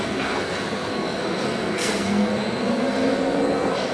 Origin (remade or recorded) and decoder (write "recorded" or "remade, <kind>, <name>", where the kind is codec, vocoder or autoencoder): remade, codec, SNAC